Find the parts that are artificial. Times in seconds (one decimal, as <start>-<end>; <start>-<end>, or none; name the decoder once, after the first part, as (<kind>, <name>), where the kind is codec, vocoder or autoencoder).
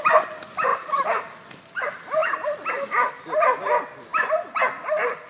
none